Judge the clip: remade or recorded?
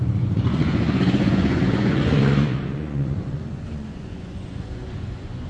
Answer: remade